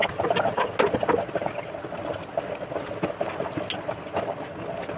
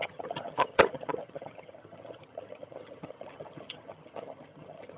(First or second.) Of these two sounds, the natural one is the first